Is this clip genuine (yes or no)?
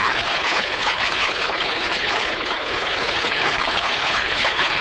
no